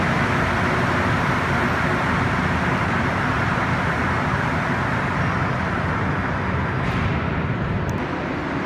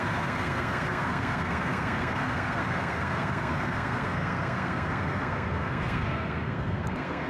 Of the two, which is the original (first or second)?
first